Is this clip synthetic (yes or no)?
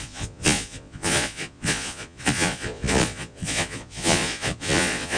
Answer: yes